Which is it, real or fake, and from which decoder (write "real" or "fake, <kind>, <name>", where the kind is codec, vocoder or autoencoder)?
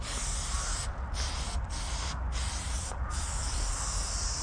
real